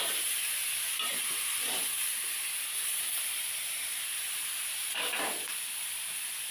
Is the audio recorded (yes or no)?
no